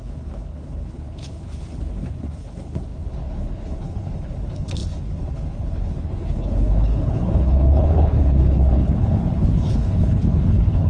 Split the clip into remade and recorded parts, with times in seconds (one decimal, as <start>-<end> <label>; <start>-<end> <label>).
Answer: 0.0-10.9 remade